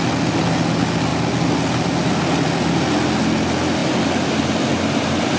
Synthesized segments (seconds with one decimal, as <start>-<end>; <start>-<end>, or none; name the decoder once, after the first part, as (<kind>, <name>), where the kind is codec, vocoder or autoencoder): 4.7-5.4 (vocoder, BigVGAN v2)